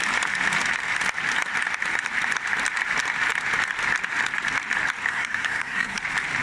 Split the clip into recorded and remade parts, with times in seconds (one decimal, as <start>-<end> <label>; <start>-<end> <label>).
0.0-5.1 recorded; 5.1-6.0 remade; 6.0-6.4 recorded